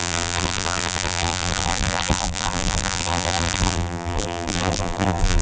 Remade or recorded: remade